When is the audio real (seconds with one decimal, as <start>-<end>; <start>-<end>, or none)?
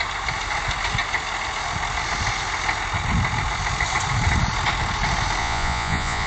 0.0-5.4